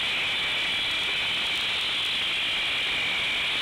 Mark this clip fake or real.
real